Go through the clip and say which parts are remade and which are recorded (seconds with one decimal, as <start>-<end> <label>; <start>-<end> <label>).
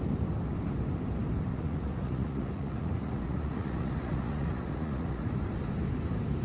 0.0-1.5 recorded; 1.5-5.3 remade; 5.3-6.4 recorded